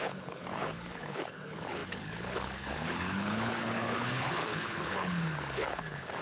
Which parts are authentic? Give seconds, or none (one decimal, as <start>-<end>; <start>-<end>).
none